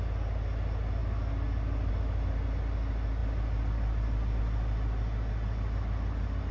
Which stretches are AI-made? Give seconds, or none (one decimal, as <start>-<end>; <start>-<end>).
none